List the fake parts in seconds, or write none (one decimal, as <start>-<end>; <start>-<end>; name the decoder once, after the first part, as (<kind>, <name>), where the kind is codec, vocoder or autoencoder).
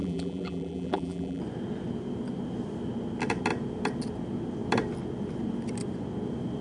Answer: 0.0-1.4 (vocoder, BigVGAN v2)